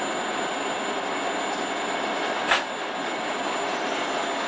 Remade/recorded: recorded